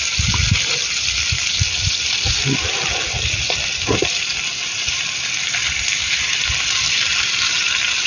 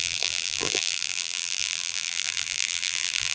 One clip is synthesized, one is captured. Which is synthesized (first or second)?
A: second